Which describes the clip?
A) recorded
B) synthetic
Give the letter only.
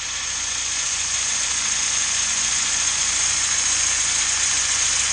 B